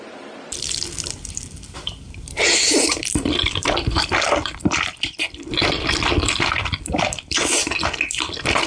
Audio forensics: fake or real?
fake